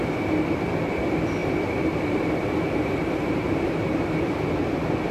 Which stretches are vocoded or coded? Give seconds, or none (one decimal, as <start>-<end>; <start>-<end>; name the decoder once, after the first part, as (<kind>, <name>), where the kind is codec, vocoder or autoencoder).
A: 1.4-4.5 (vocoder, BigVGAN v2)